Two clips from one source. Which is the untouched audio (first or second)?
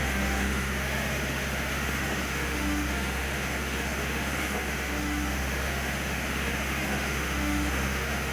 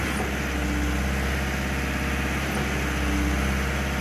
second